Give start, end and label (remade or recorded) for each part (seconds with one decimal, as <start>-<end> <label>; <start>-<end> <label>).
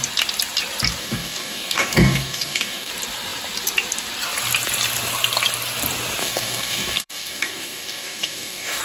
0.0-1.0 recorded; 1.0-2.9 remade; 2.9-6.2 recorded; 6.2-8.8 remade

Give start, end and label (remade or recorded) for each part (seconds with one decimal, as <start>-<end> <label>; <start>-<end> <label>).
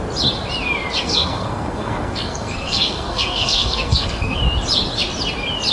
0.0-1.0 recorded; 1.0-4.4 remade; 4.4-5.7 recorded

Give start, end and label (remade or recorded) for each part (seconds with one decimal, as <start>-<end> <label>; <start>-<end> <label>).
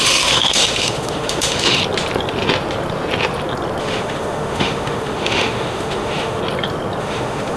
0.0-1.8 remade; 1.8-3.8 recorded; 3.8-6.4 remade; 6.4-7.0 recorded; 7.0-7.6 remade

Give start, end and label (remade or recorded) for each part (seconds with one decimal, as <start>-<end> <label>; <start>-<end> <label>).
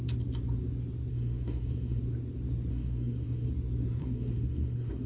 0.0-1.1 recorded; 1.1-2.0 remade; 2.0-2.7 recorded; 2.7-3.5 remade; 3.5-4.0 recorded; 4.0-5.1 remade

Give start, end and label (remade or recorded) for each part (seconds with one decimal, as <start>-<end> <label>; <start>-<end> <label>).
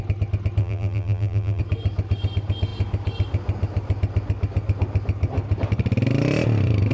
0.0-0.6 recorded; 0.6-1.6 remade; 1.6-6.9 recorded